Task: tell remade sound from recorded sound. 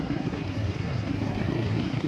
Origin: remade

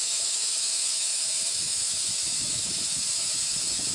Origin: remade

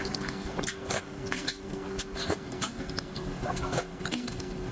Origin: remade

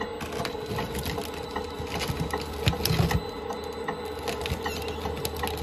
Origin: recorded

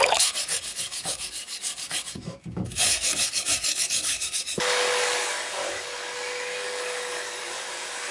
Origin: remade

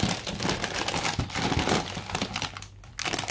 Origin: recorded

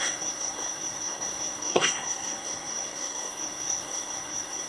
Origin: remade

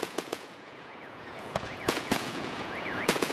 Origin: remade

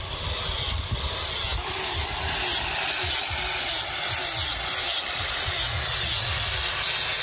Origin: recorded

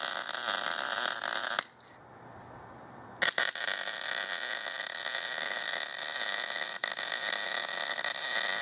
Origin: recorded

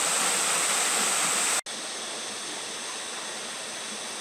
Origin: recorded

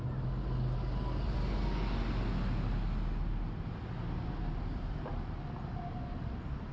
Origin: recorded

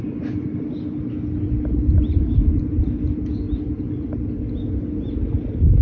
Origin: recorded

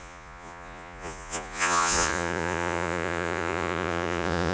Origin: remade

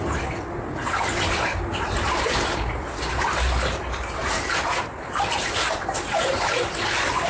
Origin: recorded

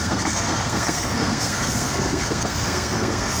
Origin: remade